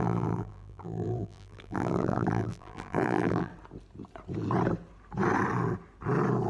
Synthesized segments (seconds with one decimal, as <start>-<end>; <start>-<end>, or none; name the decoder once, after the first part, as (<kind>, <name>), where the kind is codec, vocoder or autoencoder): 0.0-3.5 (vocoder, BigVGAN v2)